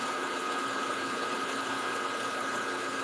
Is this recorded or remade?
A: remade